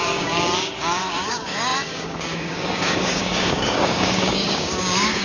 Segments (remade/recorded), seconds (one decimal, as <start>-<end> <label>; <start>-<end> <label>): 0.0-5.2 remade